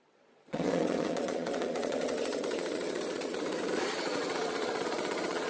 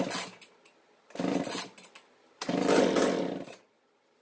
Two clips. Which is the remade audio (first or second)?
first